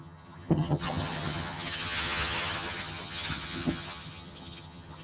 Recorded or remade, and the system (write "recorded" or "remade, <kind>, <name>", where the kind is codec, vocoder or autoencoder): remade, vocoder, HiFi-GAN